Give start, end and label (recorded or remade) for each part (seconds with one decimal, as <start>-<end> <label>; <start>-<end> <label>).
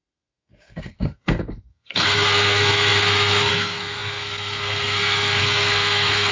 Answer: 0.0-6.3 remade